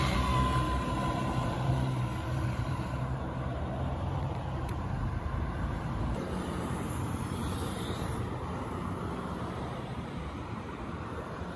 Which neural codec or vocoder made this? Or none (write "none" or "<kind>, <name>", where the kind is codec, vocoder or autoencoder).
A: vocoder, BigVGAN v2